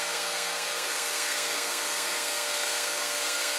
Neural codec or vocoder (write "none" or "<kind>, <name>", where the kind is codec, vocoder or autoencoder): codec, SNAC